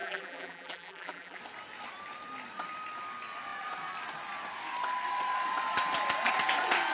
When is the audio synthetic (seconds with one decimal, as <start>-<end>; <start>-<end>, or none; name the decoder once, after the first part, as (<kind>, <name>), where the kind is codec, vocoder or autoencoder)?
0.0-1.4 (vocoder, BigVGAN v2)